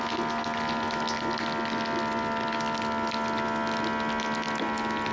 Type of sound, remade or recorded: recorded